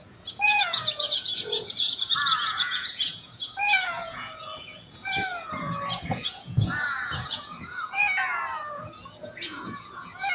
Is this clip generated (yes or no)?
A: yes